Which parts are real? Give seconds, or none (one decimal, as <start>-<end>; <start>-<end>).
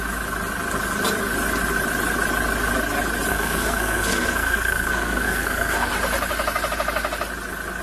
0.0-3.3; 5.9-7.8